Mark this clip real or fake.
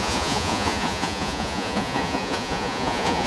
fake